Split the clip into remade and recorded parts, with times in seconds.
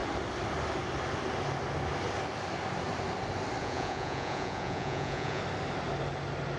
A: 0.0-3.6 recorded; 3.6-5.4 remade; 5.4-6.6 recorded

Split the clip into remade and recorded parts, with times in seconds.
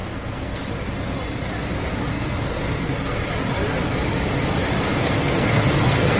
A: 0.0-0.6 remade; 0.6-2.1 recorded; 2.1-3.3 remade; 3.3-5.0 recorded; 5.0-6.2 remade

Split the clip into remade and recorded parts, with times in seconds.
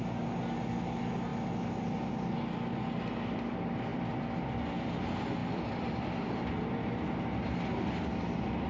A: 0.0-1.3 recorded; 1.3-2.1 remade; 2.1-5.4 recorded; 5.4-6.7 remade; 6.7-8.7 recorded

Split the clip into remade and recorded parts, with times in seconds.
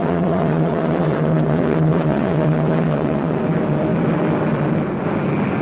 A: 0.0-3.4 remade; 3.4-5.6 recorded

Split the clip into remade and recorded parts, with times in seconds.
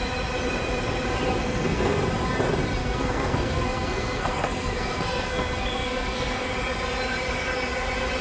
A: 0.0-1.4 recorded; 1.4-2.0 remade; 2.0-2.8 recorded; 2.8-6.5 remade; 6.5-8.2 recorded